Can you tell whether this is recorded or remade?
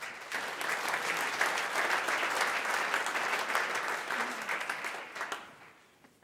recorded